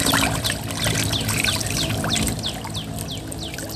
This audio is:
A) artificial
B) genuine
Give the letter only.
B